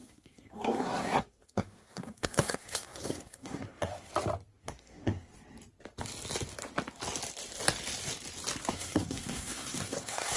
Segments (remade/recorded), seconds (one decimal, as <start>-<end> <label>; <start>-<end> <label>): 0.0-4.1 remade; 4.1-4.6 recorded; 4.6-5.3 remade; 5.3-8.7 recorded; 8.7-10.4 remade

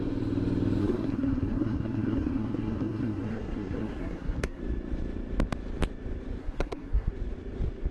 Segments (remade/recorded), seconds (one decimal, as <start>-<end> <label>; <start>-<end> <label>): 0.0-0.8 recorded; 0.8-4.6 remade; 4.6-6.4 recorded; 6.4-7.1 remade; 7.1-7.9 recorded

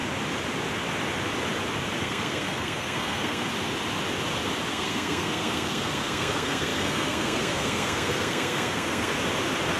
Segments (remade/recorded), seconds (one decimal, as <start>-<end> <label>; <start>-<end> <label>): 0.0-2.0 recorded; 2.0-3.5 remade; 3.5-4.7 recorded; 4.7-9.1 remade; 9.1-9.8 recorded

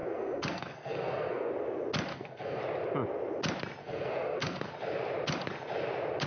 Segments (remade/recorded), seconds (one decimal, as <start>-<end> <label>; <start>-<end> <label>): 0.0-1.5 remade; 1.5-2.1 recorded; 2.1-2.6 remade; 2.6-3.8 recorded; 3.8-4.7 remade; 4.7-6.3 recorded

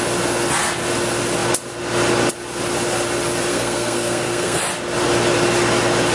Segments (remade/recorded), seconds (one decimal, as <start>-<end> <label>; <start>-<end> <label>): 0.0-3.5 recorded; 3.5-4.6 remade; 4.6-6.1 recorded